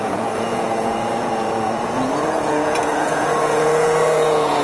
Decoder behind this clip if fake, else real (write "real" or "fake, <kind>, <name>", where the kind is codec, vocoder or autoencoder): fake, vocoder, Vocos